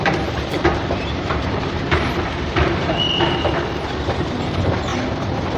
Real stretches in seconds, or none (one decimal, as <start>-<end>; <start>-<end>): 4.9-5.6